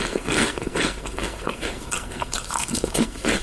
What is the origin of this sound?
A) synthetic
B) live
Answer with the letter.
A